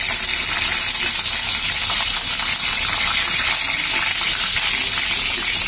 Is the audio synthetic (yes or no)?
no